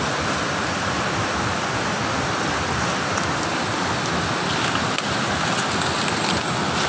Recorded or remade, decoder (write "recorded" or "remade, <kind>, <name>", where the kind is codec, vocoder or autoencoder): recorded